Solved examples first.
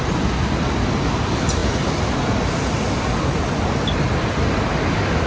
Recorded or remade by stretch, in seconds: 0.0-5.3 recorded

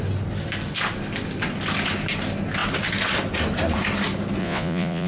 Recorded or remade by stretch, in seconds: 0.0-4.4 recorded; 4.4-5.1 remade